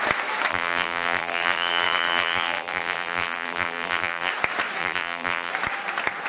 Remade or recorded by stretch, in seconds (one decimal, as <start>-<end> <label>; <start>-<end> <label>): 0.0-0.5 recorded; 0.5-4.3 remade; 4.3-4.8 recorded; 4.8-5.5 remade; 5.5-6.3 recorded